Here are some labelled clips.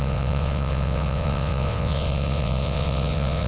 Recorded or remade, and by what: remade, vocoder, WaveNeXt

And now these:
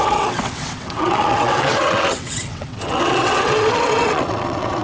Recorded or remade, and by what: remade, vocoder, WaveNeXt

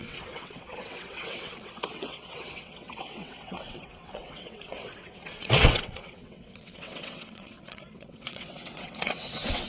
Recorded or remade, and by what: remade, vocoder, WaveNeXt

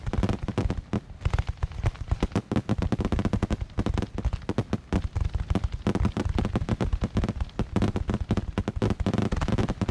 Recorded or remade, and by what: recorded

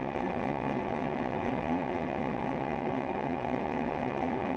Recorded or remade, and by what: remade, vocoder, WaveNeXt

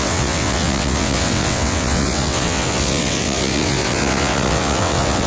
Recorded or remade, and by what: remade, vocoder, WaveNeXt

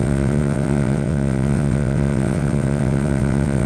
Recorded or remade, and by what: remade, vocoder, WaveNeXt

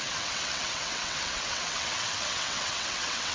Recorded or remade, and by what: remade, vocoder, WaveNeXt